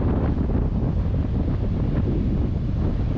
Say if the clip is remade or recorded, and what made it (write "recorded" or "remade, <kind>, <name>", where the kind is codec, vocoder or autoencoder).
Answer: recorded